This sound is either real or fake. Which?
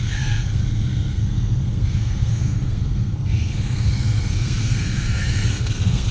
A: fake